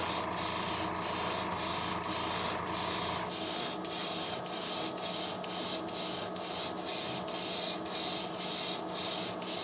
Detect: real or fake real